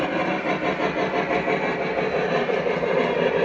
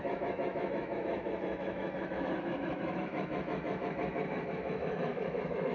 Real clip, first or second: first